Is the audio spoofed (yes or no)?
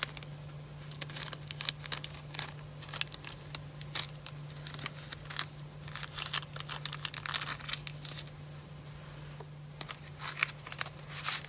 no